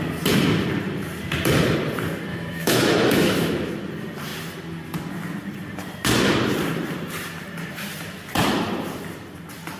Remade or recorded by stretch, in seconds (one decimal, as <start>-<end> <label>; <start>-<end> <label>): 0.0-2.3 recorded; 2.3-3.7 remade; 3.7-9.8 recorded